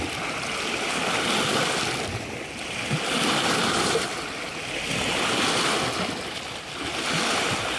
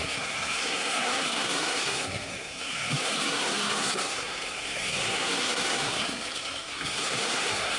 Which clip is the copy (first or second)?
second